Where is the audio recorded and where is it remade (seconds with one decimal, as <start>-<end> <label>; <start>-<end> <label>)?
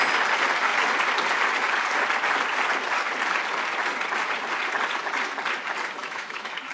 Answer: 0.0-6.0 recorded; 6.0-6.7 remade